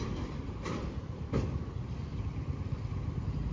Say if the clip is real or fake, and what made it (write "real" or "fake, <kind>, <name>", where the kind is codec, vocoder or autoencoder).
real